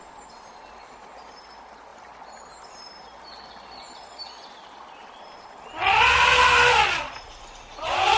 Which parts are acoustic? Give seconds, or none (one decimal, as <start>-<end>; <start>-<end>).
0.0-8.2